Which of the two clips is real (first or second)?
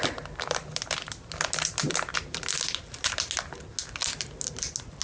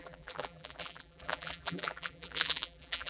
first